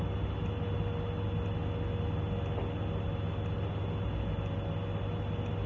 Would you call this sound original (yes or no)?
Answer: yes